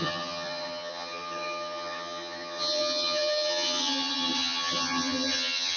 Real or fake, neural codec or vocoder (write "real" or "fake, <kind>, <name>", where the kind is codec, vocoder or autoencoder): fake, vocoder, HiFi-GAN